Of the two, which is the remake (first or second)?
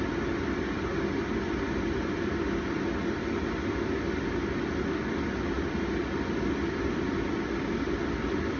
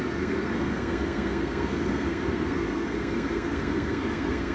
second